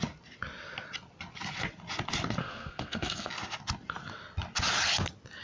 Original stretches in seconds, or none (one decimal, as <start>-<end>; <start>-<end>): 0.0-2.4; 3.3-5.4